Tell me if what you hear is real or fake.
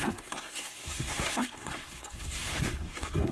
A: fake